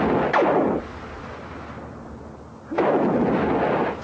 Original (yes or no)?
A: yes